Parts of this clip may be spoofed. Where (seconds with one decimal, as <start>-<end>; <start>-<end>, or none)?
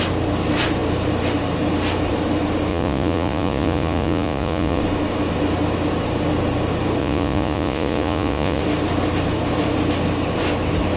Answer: 2.7-4.8; 7.0-8.6